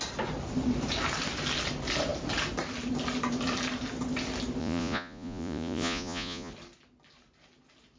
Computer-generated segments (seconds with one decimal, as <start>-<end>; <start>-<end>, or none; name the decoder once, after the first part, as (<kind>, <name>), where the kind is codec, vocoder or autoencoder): 4.6-6.5 (vocoder, Vocos)